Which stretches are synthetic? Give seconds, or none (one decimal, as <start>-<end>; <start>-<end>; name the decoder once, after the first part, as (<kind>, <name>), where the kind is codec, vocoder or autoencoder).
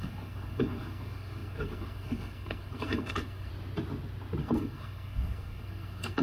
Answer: 0.0-3.5 (codec, SNAC); 4.4-6.2